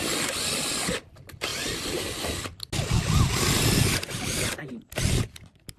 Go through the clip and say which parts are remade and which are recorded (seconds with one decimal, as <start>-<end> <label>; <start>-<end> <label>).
0.0-5.8 recorded